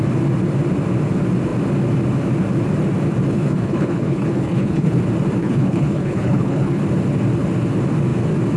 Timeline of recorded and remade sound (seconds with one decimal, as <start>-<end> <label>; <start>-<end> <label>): 0.0-3.3 recorded; 3.3-5.0 remade; 5.0-5.4 recorded; 5.4-6.8 remade; 6.8-8.6 recorded